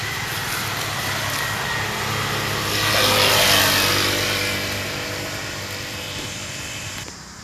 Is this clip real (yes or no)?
yes